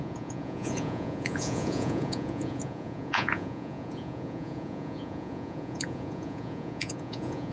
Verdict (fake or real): fake